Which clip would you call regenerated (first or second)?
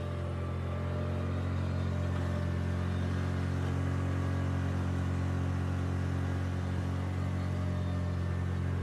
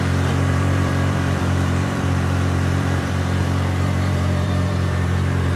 second